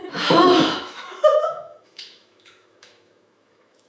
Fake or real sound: fake